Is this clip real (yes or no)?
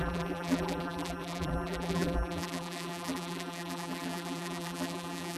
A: no